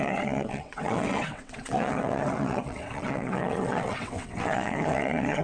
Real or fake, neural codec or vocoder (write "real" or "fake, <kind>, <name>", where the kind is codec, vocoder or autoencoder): fake, vocoder, WaveNeXt